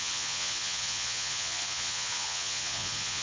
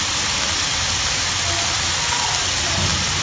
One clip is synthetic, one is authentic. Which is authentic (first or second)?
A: second